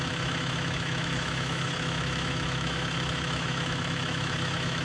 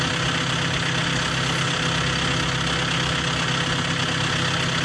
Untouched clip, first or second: second